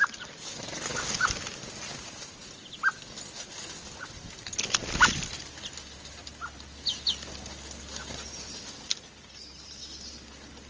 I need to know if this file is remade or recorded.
recorded